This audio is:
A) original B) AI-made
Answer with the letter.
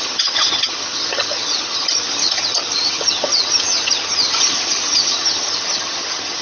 B